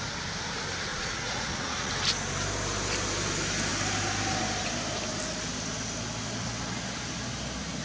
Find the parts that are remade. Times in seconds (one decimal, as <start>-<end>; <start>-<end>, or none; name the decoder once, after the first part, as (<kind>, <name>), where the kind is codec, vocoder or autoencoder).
0.9-1.9 (vocoder, Vocos)